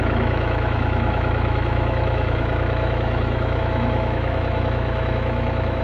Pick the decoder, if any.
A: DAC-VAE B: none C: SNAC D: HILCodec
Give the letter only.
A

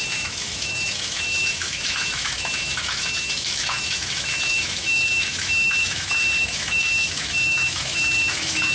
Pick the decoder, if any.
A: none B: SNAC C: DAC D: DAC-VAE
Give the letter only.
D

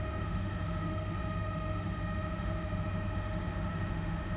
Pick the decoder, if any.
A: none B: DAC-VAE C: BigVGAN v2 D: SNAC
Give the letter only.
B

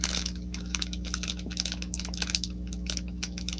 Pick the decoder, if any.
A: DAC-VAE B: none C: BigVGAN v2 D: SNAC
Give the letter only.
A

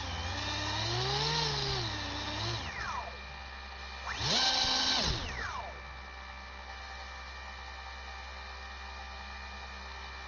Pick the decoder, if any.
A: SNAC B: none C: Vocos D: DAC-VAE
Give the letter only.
B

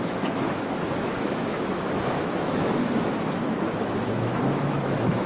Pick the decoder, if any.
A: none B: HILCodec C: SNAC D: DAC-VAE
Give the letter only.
D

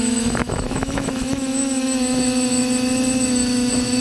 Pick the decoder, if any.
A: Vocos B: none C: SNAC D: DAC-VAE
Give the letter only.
D